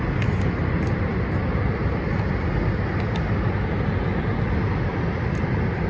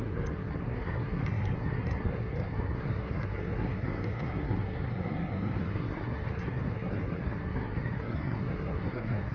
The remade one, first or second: second